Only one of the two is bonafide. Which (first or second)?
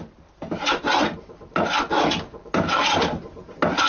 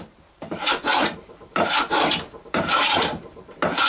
first